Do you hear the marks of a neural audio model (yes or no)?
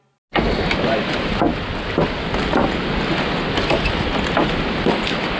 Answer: no